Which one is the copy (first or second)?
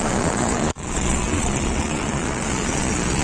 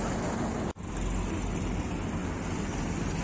first